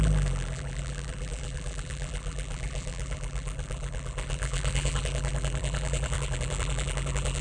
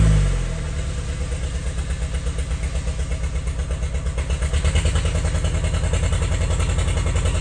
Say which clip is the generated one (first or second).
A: first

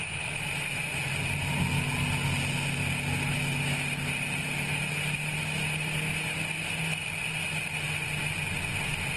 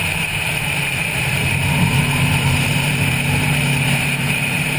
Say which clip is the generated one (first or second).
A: second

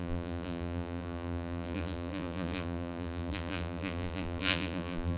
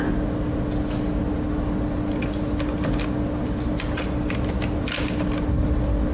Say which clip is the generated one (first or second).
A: first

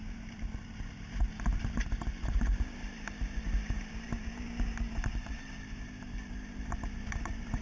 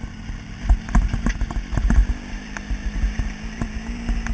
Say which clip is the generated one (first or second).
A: first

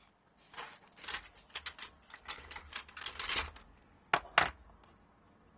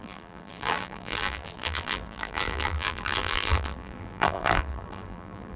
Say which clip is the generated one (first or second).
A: second